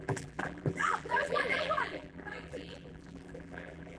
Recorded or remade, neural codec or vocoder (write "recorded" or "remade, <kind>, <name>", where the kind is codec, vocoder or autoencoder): remade, vocoder, BigVGAN v2